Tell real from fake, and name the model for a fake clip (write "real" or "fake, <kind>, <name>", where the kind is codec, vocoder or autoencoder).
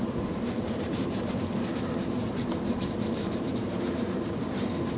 fake, vocoder, BigVGAN v2